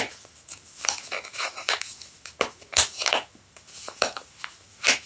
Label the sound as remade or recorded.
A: remade